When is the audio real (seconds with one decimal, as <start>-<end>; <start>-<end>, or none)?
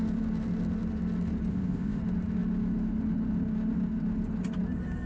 0.0-1.5; 2.0-5.1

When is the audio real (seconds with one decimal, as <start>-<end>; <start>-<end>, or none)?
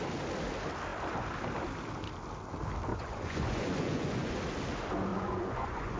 0.0-2.9; 4.4-5.1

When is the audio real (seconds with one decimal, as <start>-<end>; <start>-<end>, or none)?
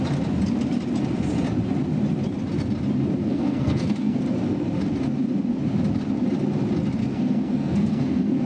0.0-3.2; 4.2-7.0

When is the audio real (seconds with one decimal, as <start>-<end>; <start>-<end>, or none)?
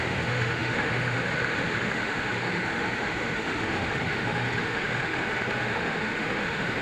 none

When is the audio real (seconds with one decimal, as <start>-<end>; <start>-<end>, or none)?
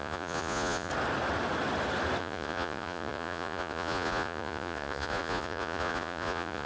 0.9-2.2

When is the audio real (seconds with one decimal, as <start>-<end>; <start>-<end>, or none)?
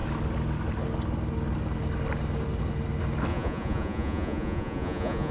0.0-3.3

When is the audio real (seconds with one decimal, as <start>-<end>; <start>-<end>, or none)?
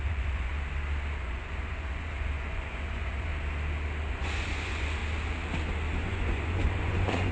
0.5-1.2; 3.3-4.1; 5.0-6.0